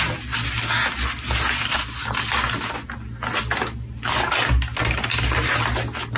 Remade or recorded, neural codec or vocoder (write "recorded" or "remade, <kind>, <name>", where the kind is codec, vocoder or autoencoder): recorded